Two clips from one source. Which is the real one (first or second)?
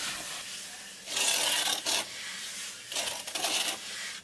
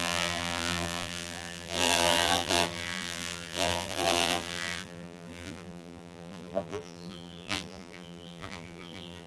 first